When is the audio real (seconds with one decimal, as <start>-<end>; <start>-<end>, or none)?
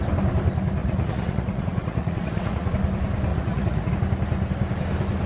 0.0-0.8; 2.7-3.3; 3.9-5.3